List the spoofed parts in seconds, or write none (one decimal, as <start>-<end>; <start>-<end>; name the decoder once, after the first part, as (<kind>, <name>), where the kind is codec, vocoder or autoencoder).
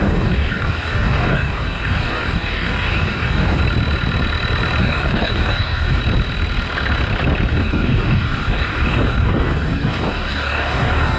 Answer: 0.0-3.6 (codec, DAC); 4.8-6.0; 7.5-11.2